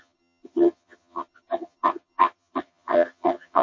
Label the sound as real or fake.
fake